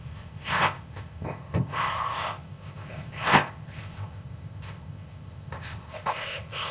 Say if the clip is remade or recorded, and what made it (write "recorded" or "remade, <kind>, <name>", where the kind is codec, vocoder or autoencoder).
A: remade, codec, ZipCodec